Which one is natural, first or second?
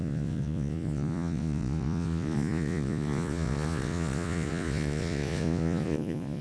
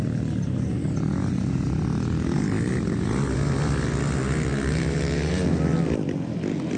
second